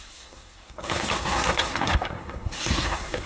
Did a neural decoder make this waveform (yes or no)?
yes